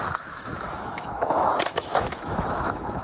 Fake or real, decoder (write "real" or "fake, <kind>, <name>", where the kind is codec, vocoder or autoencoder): fake, autoencoder, DAC-VAE